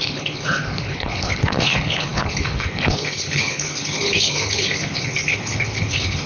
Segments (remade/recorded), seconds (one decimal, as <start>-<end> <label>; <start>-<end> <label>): 0.0-6.3 remade